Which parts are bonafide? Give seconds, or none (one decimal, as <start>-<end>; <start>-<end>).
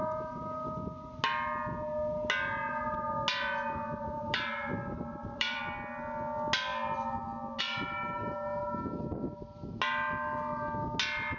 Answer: 0.0-4.0; 5.6-11.4